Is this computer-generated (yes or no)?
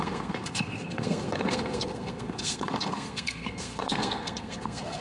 yes